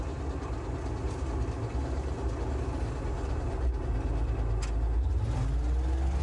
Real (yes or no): yes